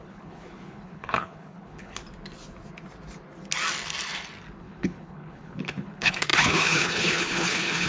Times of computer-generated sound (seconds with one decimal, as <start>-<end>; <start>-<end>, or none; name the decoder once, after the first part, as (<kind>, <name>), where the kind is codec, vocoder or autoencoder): 0.0-2.0 (codec, HILCodec); 4.6-7.9